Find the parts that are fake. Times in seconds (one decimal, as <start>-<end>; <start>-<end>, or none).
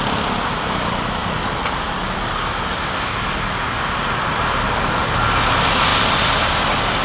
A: 5.9-6.6